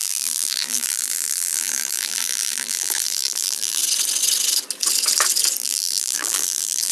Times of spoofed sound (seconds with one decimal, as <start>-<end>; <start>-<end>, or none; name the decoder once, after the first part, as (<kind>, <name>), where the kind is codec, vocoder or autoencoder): 0.0-3.8 (vocoder, BigVGAN v2); 5.6-6.9